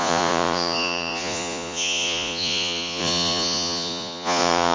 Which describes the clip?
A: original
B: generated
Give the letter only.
B